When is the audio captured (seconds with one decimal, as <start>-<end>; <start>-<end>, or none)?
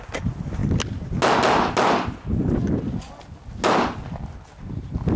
0.0-5.2